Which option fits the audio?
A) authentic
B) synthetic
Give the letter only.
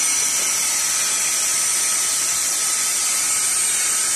B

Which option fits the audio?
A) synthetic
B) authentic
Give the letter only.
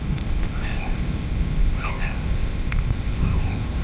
A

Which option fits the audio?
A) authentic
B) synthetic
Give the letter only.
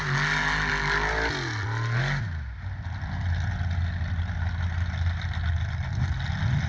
A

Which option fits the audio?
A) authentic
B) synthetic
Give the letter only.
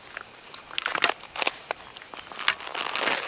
A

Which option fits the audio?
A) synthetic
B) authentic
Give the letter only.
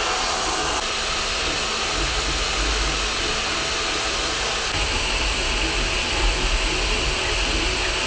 B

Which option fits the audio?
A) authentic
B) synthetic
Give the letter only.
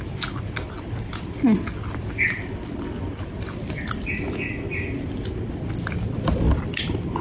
A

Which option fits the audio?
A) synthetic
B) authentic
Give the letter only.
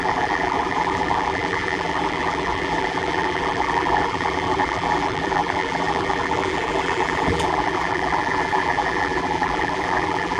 A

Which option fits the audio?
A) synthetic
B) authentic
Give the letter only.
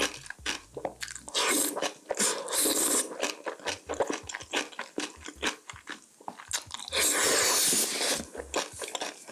B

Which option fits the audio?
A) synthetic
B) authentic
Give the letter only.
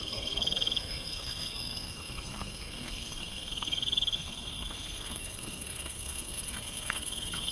A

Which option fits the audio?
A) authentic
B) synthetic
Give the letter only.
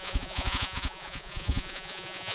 B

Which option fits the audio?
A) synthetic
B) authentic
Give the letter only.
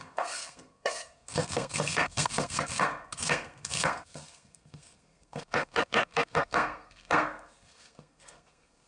A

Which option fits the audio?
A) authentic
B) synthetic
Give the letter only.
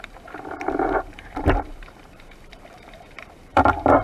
B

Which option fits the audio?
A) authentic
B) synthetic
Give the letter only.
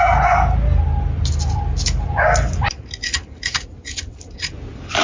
A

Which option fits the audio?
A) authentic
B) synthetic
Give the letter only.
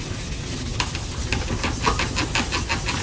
A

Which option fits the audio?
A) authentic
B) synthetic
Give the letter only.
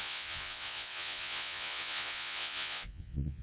B